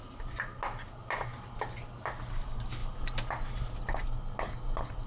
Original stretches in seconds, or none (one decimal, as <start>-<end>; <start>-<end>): 0.0-5.1